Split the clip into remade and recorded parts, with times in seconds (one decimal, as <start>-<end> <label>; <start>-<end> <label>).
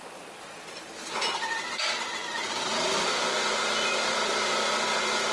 0.0-5.3 recorded